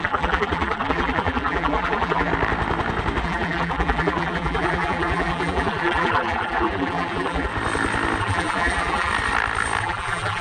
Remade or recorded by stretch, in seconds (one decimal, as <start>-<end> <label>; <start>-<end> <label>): 0.0-2.3 remade; 2.3-3.2 recorded; 3.2-7.5 remade; 7.5-8.2 recorded; 8.2-9.1 remade; 9.1-9.8 recorded; 9.8-10.4 remade